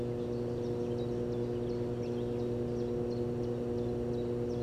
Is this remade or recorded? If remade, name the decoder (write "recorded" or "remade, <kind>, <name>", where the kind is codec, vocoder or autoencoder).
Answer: recorded